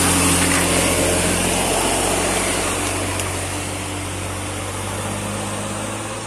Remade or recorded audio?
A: recorded